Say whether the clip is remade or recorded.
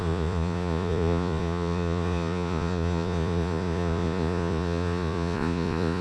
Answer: remade